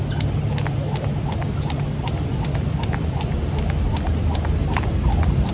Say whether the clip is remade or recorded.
recorded